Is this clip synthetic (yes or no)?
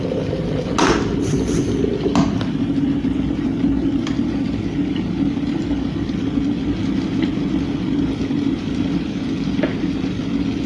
no